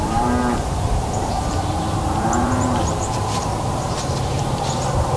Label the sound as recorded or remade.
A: remade